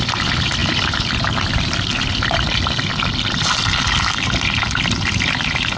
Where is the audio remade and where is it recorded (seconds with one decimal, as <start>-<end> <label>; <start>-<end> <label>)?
0.0-5.8 recorded